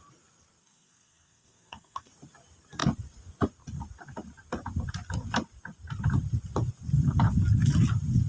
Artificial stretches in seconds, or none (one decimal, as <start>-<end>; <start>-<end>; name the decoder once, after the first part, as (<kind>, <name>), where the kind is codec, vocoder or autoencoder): 0.6-2.1 (codec, SNAC)